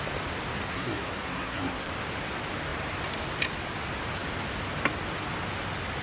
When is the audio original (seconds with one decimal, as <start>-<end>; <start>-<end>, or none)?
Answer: 0.0-0.7; 1.9-6.0